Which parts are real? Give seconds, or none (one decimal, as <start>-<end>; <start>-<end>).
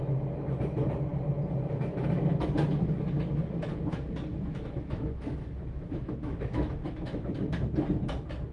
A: 0.0-4.3; 7.5-8.5